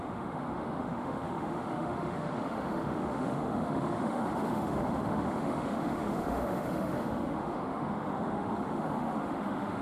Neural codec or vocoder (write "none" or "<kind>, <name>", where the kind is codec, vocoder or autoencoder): autoencoder, DAC-VAE